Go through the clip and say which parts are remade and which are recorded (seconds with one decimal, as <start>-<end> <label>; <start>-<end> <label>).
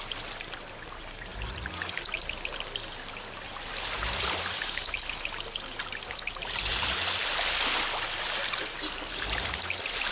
0.0-10.1 recorded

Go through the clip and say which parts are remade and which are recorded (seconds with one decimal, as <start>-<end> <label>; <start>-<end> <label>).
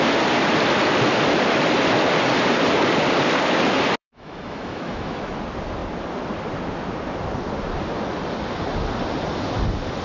0.0-4.0 recorded; 4.0-5.3 remade; 5.3-10.0 recorded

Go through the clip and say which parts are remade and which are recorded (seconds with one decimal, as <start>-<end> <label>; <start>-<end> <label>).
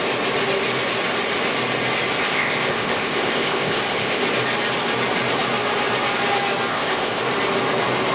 0.0-2.3 recorded; 2.3-4.2 remade; 4.2-6.7 recorded; 6.7-7.2 remade; 7.2-8.1 recorded